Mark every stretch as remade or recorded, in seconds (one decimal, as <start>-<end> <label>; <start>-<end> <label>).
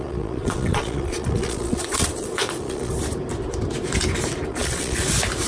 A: 0.0-2.9 remade; 2.9-4.5 recorded; 4.5-5.0 remade; 5.0-5.5 recorded